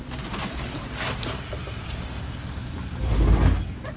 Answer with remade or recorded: recorded